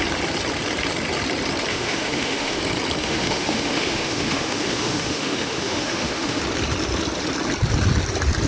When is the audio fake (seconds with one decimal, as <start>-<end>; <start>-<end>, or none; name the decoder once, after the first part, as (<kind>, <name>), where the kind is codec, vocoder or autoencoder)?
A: 1.7-2.6 (autoencoder, DAC-VAE); 3.0-6.4